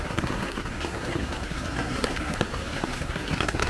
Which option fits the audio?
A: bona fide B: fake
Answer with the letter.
B